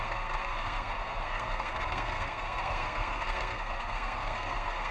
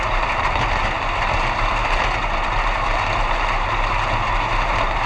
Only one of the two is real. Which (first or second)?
second